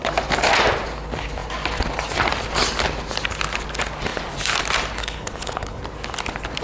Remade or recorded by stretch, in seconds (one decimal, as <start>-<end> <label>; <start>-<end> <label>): 0.0-5.0 recorded; 5.0-5.8 remade; 5.8-6.6 recorded